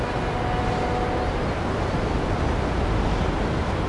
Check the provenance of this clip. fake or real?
real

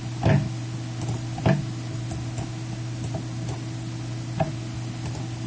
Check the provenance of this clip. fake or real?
real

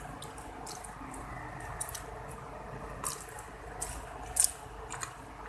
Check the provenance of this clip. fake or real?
real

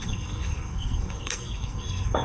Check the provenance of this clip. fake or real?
fake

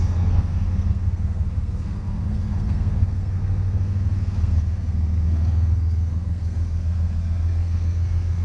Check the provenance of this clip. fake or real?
fake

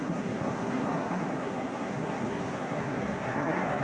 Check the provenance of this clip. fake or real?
fake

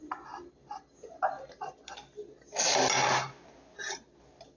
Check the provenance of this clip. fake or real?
real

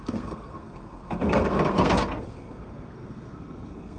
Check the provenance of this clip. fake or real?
fake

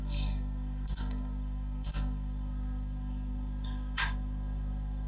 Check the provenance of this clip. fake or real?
fake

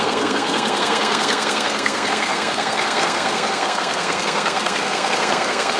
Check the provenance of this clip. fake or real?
fake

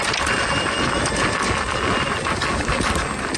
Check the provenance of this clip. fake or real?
real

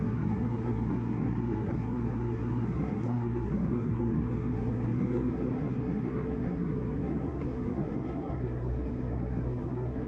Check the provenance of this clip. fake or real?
fake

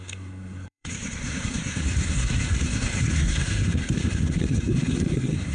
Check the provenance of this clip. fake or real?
fake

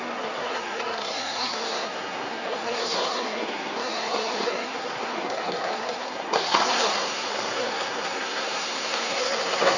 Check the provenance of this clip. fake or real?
fake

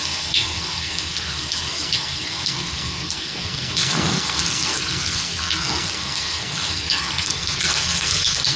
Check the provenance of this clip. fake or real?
fake